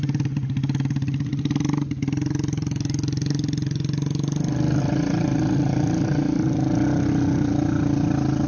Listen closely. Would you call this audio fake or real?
real